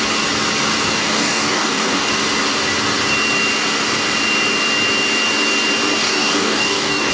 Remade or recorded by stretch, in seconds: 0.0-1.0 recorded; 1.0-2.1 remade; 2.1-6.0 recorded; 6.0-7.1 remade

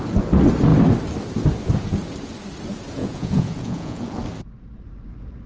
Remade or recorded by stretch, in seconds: 0.0-3.0 recorded; 3.0-4.2 remade; 4.2-5.5 recorded

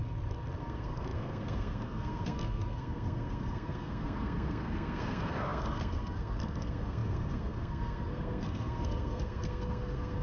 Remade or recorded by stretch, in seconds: 0.0-0.6 recorded; 0.6-10.2 remade